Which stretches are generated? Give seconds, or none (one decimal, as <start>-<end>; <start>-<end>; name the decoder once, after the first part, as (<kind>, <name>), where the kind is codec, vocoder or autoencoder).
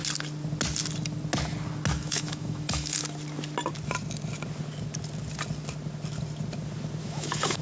2.0-3.0 (autoencoder, DAC-VAE); 7.0-7.6